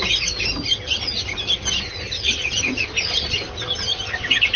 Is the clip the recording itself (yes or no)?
yes